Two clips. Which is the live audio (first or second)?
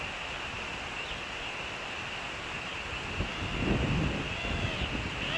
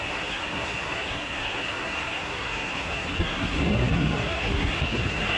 first